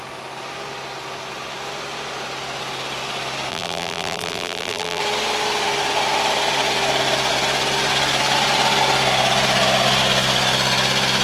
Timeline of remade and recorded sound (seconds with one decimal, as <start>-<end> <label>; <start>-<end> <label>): 0.0-3.5 recorded; 3.5-5.0 remade; 5.0-11.2 recorded